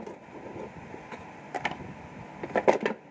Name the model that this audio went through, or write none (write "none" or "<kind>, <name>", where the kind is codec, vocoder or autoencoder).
none